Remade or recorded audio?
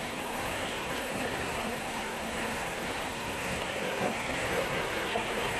remade